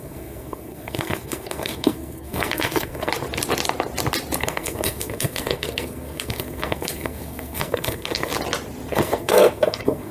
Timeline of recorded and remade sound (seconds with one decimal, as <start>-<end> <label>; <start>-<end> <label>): 0.0-3.1 remade; 3.1-4.4 recorded; 4.4-8.3 remade; 8.3-8.9 recorded; 8.9-10.1 remade